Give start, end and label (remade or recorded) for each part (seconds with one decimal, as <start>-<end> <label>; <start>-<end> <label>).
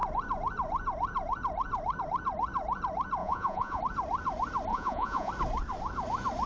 0.0-3.2 recorded; 3.2-3.8 remade; 3.8-4.7 recorded; 4.7-5.3 remade; 5.3-6.5 recorded